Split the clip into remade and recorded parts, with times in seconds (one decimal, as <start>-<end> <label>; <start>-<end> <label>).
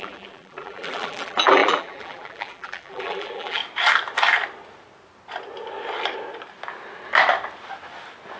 0.0-3.6 remade; 3.6-8.4 recorded